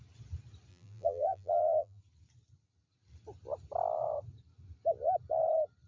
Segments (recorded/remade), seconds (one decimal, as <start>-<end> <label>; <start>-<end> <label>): 0.0-0.7 recorded; 0.7-2.0 remade; 2.0-5.9 recorded